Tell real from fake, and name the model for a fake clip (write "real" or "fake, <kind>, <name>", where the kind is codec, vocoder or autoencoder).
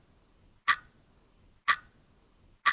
real